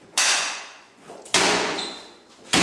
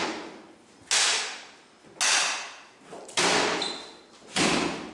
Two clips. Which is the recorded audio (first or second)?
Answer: second